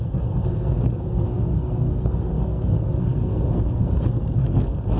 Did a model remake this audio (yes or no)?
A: yes